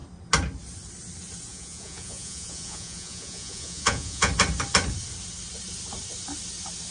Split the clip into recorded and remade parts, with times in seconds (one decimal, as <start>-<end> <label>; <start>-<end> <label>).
0.0-1.5 recorded; 1.5-4.3 remade; 4.3-6.9 recorded